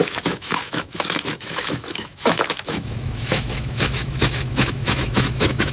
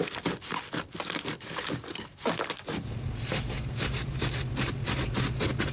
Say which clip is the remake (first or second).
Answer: first